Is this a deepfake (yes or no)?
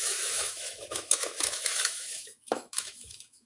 yes